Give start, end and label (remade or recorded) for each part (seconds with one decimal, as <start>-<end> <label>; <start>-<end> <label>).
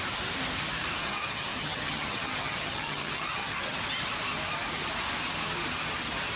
0.0-1.0 recorded; 1.0-3.8 remade; 3.8-6.4 recorded